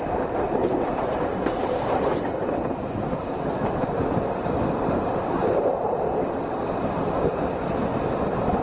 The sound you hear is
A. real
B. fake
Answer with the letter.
A